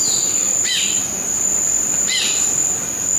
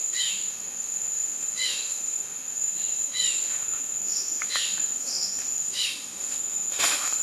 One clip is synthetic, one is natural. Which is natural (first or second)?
first